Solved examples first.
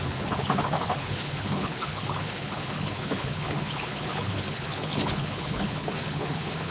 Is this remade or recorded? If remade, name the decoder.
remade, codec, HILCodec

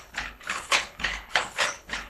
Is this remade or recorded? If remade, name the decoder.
remade, codec, HILCodec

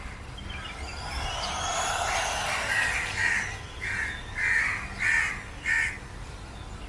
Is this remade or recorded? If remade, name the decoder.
recorded